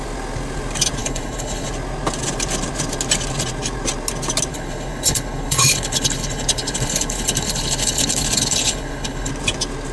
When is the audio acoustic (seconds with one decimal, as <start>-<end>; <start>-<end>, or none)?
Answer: 0.0-1.0; 1.7-4.5; 9.3-9.9